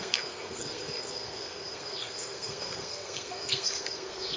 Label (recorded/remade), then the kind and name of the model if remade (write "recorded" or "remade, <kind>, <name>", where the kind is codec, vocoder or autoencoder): remade, codec, SNAC